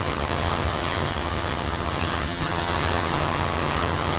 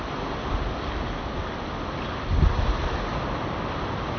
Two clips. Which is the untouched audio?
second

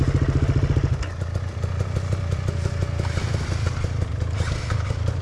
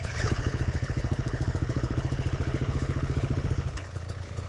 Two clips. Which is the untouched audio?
first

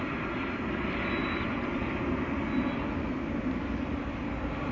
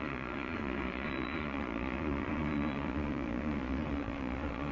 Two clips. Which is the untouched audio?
first